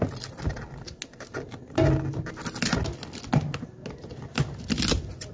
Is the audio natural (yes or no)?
yes